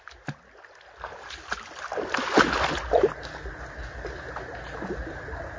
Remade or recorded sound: recorded